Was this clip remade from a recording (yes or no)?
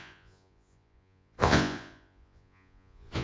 yes